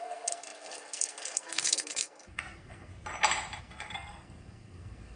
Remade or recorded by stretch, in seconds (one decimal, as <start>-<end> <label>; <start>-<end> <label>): 0.0-2.9 remade; 2.9-3.6 recorded; 3.6-5.2 remade